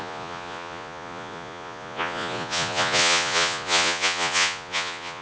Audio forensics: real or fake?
fake